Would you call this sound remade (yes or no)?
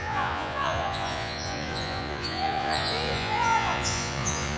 yes